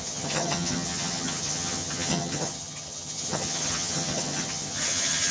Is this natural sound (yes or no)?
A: no